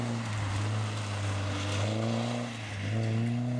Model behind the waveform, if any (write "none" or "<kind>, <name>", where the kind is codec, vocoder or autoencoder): none